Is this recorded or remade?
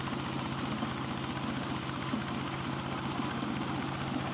recorded